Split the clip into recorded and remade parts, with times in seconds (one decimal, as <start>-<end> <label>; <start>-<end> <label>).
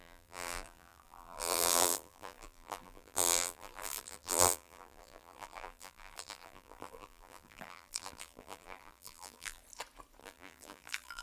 0.0-9.6 remade; 9.6-10.2 recorded; 10.2-11.2 remade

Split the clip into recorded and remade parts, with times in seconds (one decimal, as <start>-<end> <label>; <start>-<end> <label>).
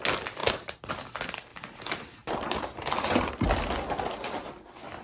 0.0-0.4 recorded; 0.4-0.9 remade; 0.9-1.5 recorded; 1.5-2.8 remade; 2.8-5.0 recorded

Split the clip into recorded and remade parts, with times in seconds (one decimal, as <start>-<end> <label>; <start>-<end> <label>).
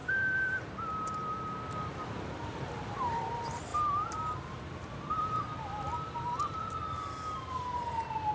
0.0-0.7 remade; 0.7-1.9 recorded; 1.9-3.3 remade; 3.3-3.7 recorded; 3.7-5.4 remade; 5.4-5.9 recorded; 5.9-6.8 remade; 6.8-8.3 recorded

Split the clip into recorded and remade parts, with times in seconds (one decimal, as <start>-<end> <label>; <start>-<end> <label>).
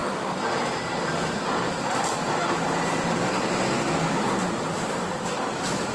0.0-3.5 remade; 3.5-4.4 recorded; 4.4-5.5 remade; 5.5-5.9 recorded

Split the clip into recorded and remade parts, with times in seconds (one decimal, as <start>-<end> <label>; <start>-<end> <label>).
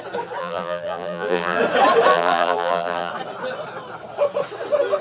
0.0-0.4 recorded; 0.4-1.6 remade; 1.6-2.1 recorded; 2.1-3.1 remade; 3.1-5.0 recorded